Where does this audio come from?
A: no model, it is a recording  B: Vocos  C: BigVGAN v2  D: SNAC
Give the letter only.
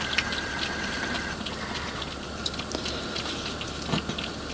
A